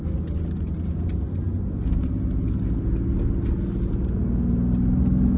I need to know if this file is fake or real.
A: real